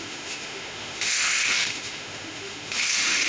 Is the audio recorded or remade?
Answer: remade